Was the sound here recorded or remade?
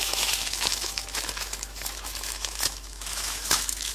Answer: remade